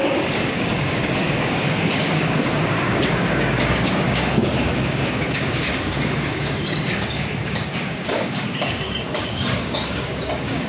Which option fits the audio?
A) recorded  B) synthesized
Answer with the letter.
B